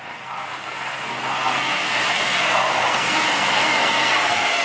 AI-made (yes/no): yes